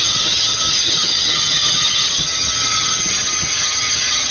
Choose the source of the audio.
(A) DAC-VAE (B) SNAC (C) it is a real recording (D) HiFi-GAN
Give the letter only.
D